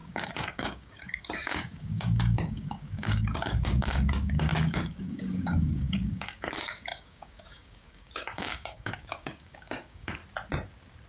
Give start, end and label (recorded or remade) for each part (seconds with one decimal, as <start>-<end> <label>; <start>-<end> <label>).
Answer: 0.0-10.2 remade; 10.2-11.1 recorded